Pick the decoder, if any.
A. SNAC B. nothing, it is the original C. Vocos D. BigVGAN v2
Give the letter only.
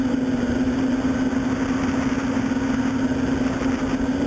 B